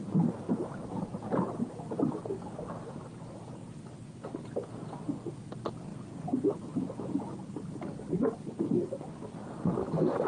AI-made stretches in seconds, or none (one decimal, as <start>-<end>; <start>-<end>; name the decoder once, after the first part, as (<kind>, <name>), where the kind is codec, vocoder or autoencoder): none